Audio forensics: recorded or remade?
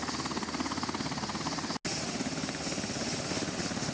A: recorded